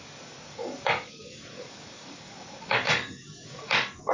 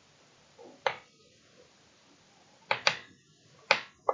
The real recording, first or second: second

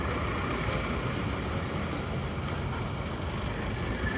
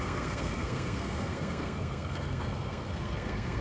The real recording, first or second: first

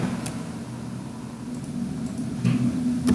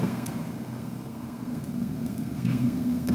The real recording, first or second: first